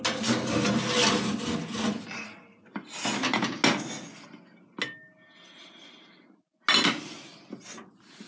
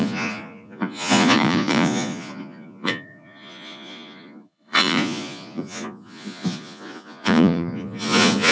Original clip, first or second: first